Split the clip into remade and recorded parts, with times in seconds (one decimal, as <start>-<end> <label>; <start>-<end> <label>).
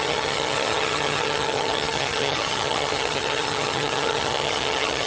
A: 0.0-5.1 remade